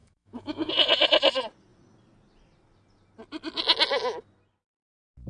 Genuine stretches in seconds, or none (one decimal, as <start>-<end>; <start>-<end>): 0.7-5.3